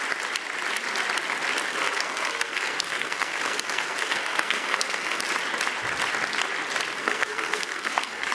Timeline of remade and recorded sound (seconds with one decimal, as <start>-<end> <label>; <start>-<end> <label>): 0.0-1.7 recorded; 1.7-5.2 remade; 5.2-7.0 recorded; 7.0-8.3 remade